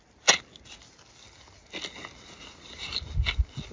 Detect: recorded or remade recorded